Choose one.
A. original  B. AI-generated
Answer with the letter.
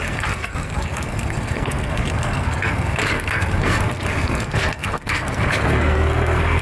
B